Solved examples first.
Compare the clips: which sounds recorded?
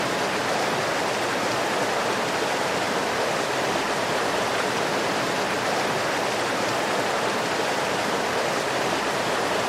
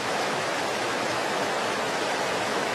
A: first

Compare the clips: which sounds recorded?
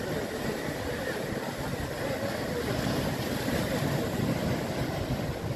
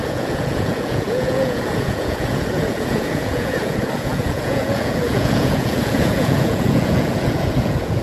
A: first